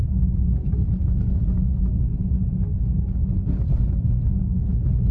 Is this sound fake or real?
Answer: real